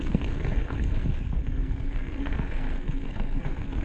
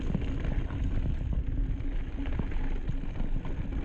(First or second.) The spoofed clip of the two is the first